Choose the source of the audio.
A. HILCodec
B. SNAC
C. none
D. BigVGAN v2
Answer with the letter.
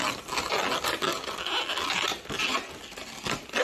C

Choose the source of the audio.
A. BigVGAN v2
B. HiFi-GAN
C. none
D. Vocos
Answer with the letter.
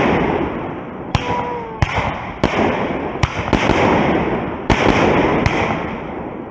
C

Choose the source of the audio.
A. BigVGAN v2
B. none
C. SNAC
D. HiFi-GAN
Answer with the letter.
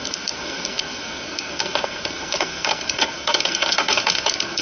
C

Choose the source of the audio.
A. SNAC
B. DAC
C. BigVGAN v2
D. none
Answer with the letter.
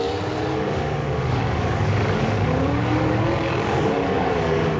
B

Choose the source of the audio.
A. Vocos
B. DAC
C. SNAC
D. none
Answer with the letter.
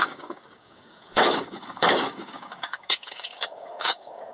B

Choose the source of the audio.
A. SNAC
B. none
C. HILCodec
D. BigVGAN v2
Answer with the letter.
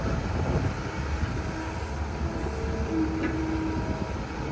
B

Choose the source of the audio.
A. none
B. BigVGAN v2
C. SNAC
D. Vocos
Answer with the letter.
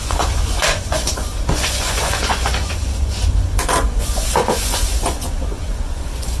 D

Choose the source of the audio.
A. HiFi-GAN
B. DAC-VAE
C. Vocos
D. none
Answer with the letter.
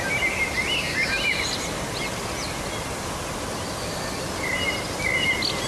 D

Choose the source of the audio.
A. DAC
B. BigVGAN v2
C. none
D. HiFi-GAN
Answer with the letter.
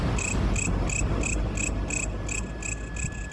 C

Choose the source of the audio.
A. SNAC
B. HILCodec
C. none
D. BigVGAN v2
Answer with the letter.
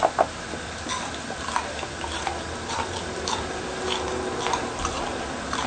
C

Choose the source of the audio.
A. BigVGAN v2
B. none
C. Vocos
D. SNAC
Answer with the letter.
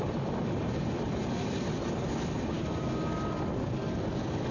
B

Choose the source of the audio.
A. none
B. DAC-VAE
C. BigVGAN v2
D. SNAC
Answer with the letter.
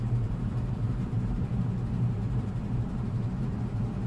C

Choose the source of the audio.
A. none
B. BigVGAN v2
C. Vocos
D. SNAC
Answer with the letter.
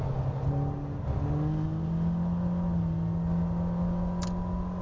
A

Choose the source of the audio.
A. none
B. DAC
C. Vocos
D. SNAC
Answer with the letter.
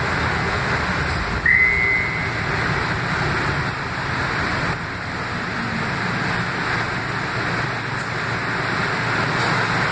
A